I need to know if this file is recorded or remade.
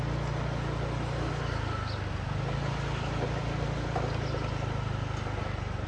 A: recorded